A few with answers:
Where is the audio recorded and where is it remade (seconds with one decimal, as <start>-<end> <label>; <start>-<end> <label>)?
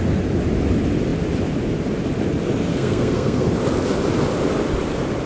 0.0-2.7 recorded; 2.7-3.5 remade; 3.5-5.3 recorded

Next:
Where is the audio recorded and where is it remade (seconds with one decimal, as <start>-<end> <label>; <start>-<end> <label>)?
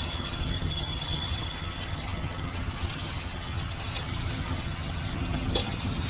0.0-6.1 remade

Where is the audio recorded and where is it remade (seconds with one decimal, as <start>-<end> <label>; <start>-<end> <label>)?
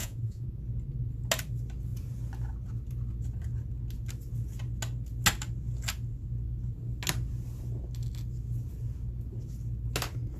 0.0-0.6 remade; 0.6-10.4 recorded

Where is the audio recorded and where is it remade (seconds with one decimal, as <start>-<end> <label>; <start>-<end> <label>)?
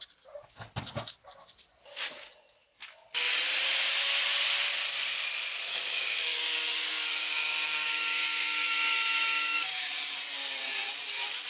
0.0-5.7 recorded; 5.7-9.9 remade; 9.9-11.5 recorded